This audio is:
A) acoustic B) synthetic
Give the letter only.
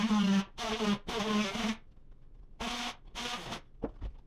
A